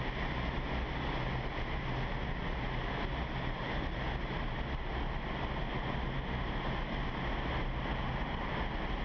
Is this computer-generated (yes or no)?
no